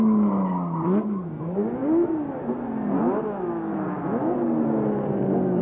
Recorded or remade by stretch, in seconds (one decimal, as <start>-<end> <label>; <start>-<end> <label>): 0.0-5.6 recorded